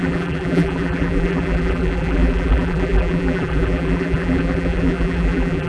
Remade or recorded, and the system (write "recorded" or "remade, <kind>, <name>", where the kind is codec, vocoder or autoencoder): remade, vocoder, BigVGAN v2